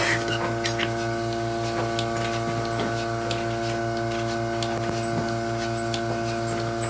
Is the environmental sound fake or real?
real